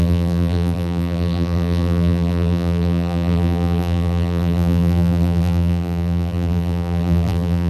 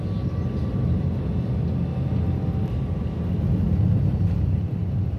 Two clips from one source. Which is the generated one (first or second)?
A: first